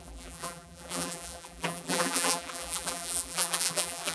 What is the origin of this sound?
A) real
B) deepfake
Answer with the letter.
B